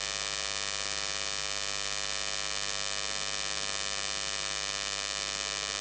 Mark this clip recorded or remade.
recorded